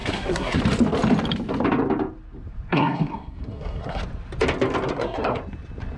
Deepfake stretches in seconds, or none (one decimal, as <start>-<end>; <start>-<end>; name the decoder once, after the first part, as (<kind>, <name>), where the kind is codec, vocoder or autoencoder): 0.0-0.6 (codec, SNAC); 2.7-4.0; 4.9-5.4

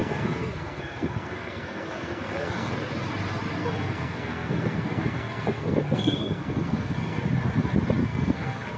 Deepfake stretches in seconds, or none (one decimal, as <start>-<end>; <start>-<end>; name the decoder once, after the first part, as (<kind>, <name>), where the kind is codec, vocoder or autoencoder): 0.0-2.7 (codec, SNAC); 3.6-7.2; 8.0-8.8

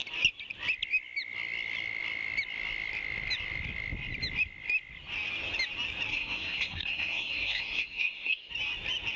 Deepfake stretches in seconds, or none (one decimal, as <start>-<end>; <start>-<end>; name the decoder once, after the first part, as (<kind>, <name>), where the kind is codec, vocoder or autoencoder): 6.1-8.5 (codec, SNAC)

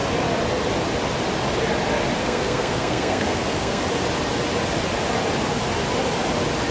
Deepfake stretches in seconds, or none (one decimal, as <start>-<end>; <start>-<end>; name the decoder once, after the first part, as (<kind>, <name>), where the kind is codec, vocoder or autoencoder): 2.2-3.8 (codec, SNAC)

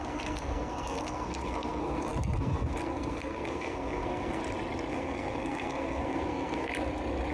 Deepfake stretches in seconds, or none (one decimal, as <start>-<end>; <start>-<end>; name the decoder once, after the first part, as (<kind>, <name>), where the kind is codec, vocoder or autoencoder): 0.0-4.4 (codec, SNAC); 4.9-6.7

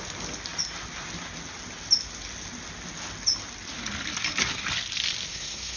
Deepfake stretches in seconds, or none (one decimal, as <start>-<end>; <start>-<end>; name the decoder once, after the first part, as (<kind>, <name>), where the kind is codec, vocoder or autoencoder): 5.3-5.8 (codec, SNAC)